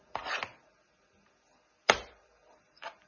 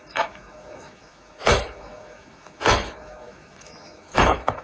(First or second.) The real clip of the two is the first